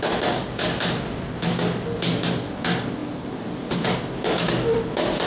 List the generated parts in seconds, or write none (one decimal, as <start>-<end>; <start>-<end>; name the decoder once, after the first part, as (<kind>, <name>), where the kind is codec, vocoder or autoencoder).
none